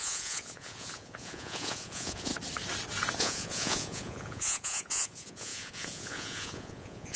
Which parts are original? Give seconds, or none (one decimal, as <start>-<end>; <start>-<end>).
2.3-3.2